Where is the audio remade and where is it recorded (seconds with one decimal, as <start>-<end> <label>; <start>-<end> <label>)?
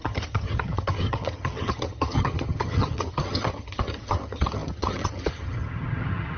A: 0.0-6.4 remade